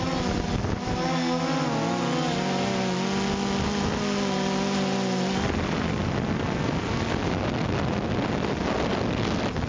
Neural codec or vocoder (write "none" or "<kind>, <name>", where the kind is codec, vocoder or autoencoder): none